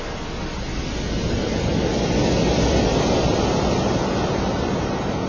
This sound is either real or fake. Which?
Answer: real